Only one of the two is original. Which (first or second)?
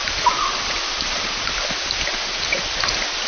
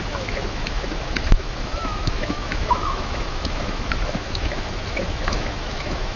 first